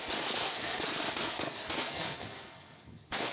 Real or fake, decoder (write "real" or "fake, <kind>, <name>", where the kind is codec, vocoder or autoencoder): fake, codec, SNAC